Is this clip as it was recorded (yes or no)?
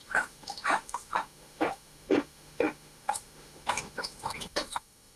no